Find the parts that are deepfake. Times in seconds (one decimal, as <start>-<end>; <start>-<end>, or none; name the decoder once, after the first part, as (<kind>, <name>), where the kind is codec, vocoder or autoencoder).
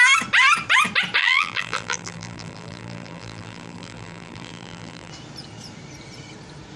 1.2-5.1 (vocoder, BigVGAN v2)